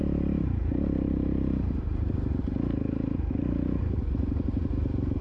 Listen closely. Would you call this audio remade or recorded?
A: remade